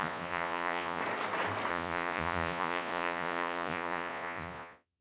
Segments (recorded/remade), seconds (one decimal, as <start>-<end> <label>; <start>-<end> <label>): 0.0-1.0 remade; 1.0-1.7 recorded; 1.7-5.0 remade